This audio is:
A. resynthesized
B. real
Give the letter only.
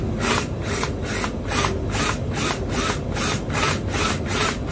B